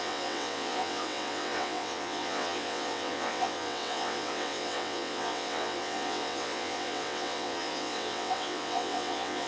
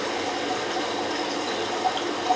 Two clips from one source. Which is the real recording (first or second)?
second